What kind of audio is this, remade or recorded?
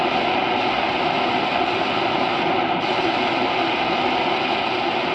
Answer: recorded